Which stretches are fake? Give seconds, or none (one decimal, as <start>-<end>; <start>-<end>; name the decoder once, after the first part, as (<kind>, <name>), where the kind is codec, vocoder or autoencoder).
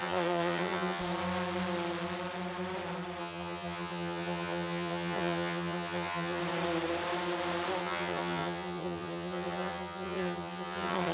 0.0-1.0 (vocoder, HiFi-GAN); 3.2-6.4; 7.8-11.1